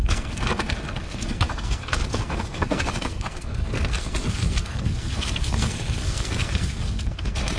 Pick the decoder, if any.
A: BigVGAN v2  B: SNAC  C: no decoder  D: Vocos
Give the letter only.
B